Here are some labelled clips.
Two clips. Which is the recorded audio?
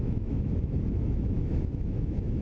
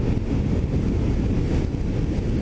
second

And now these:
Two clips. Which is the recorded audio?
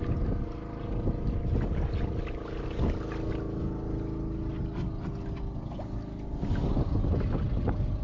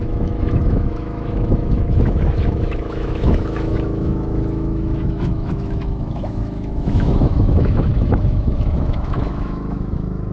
first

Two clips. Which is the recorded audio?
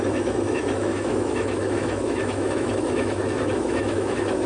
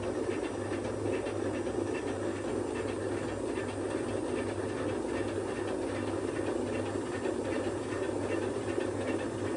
second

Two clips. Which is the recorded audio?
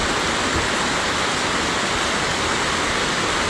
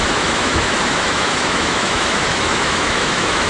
first